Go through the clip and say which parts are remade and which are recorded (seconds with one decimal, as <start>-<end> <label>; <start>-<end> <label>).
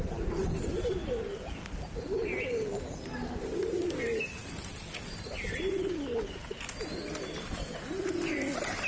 0.0-8.9 recorded